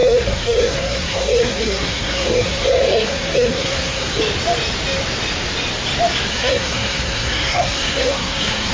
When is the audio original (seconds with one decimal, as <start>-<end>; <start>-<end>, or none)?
4.2-6.3